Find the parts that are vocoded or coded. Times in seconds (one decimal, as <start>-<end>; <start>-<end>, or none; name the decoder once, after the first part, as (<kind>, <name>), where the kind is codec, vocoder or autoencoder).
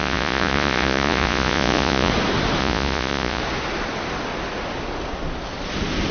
0.0-2.1 (vocoder, Vocos); 2.6-3.4